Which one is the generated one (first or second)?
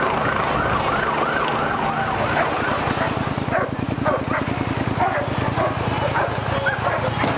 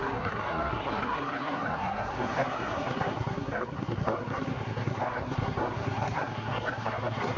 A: second